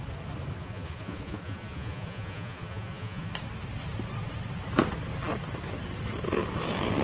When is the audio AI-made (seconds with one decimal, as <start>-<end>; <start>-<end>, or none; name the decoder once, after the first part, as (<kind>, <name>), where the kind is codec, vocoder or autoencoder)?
0.6-3.3 (vocoder, Vocos)